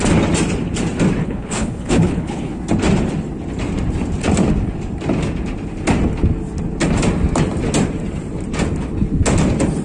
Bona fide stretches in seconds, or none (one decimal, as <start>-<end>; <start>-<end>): 0.0-1.2; 2.6-9.8